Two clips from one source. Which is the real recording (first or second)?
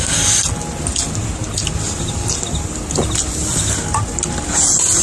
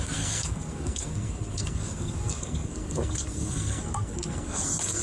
first